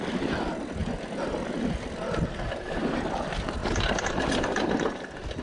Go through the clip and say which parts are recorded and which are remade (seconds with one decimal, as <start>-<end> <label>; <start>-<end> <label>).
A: 0.0-0.8 remade; 0.8-2.8 recorded; 2.8-5.4 remade